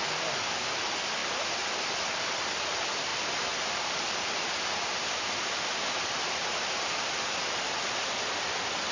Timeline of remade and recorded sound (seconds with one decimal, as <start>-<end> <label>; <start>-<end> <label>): 0.0-3.1 recorded; 3.1-7.2 remade; 7.2-8.9 recorded